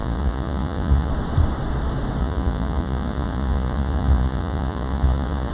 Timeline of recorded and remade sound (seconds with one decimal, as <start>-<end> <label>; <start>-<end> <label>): 0.0-1.1 remade; 1.1-2.2 recorded; 2.2-5.5 remade

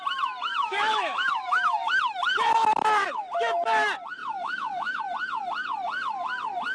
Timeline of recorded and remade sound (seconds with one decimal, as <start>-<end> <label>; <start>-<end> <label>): 0.0-0.6 recorded; 0.6-1.9 remade; 1.9-4.2 recorded; 4.2-5.0 remade; 5.0-6.7 recorded

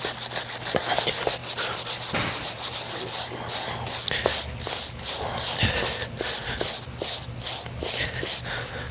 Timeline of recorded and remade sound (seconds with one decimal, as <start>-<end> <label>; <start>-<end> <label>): 0.0-8.9 recorded

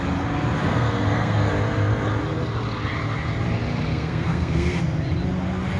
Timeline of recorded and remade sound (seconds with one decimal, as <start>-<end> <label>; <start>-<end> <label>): 0.0-0.7 recorded; 0.7-1.5 remade; 1.5-3.9 recorded; 3.9-4.8 remade; 4.8-5.8 recorded